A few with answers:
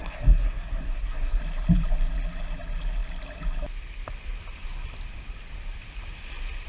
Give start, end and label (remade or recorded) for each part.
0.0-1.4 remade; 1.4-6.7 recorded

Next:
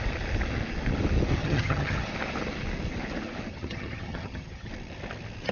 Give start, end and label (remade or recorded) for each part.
0.0-1.4 recorded; 1.4-2.1 remade; 2.1-3.5 recorded; 3.5-4.7 remade; 4.7-5.5 recorded

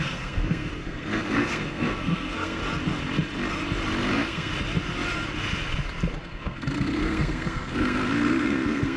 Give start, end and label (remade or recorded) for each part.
0.0-2.6 remade; 2.6-4.1 recorded; 4.1-4.5 remade; 4.5-6.2 recorded; 6.2-9.0 remade

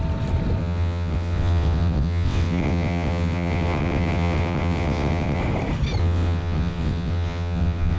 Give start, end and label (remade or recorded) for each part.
0.0-0.6 recorded; 0.6-5.4 remade; 5.4-6.0 recorded; 6.0-8.0 remade